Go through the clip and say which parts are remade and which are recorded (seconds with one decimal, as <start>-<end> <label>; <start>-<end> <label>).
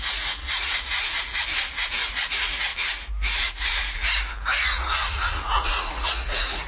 0.0-0.4 remade; 0.4-2.1 recorded; 2.1-2.7 remade; 2.7-3.4 recorded; 3.4-4.0 remade; 4.0-4.6 recorded; 4.6-6.7 remade